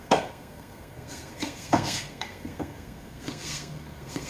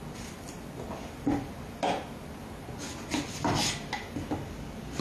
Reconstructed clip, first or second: first